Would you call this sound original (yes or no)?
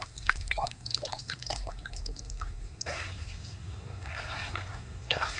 no